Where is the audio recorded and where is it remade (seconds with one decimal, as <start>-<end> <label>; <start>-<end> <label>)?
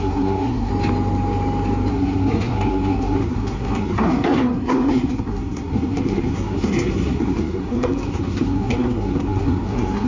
0.0-0.7 remade; 0.7-1.9 recorded; 1.9-10.1 remade